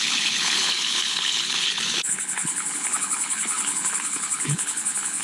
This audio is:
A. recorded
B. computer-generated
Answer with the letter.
B